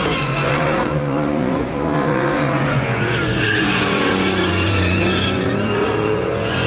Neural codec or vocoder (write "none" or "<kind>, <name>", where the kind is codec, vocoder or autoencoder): vocoder, Vocos